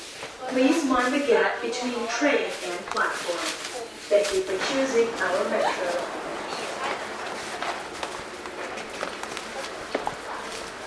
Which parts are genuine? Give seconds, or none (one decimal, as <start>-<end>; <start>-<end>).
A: 0.0-10.9

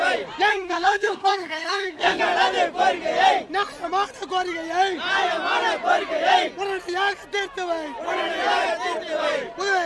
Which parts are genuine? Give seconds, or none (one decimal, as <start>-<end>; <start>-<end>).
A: 0.0-0.5; 2.2-9.9

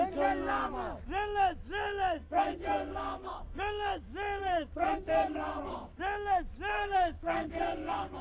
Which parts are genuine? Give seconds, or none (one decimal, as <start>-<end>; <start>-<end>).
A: 0.0-2.2; 3.6-4.4; 6.0-6.7

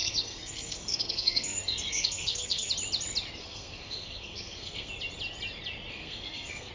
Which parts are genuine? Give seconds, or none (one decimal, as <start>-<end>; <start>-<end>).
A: 2.7-3.4; 4.9-5.9

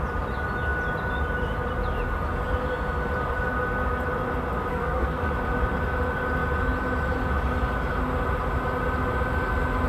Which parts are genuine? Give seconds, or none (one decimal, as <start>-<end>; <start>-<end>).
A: 0.0-4.7; 5.3-9.9

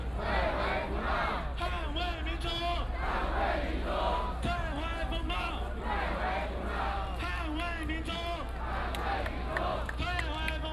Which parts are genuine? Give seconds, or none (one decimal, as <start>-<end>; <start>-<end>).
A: 0.0-10.7

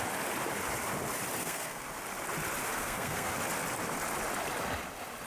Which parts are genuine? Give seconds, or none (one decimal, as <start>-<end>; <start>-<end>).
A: 0.0-1.4; 1.9-2.6; 3.3-5.3

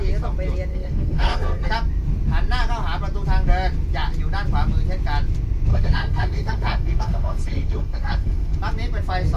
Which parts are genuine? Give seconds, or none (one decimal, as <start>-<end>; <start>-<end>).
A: 0.0-0.7; 1.7-5.7; 8.6-9.4